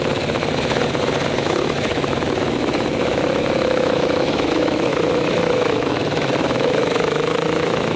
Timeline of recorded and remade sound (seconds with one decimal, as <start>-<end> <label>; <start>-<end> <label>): 0.0-0.4 remade; 0.4-1.3 recorded; 1.3-4.9 remade; 4.9-5.4 recorded; 5.4-8.0 remade